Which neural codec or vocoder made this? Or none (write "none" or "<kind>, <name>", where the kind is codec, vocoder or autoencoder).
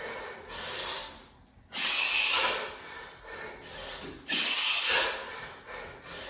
none